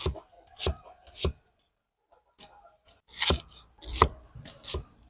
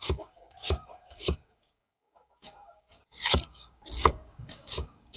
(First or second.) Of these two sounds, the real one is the first